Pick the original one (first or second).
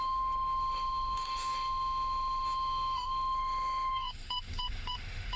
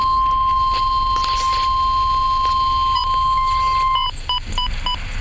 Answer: second